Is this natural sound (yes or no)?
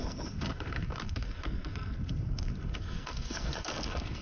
no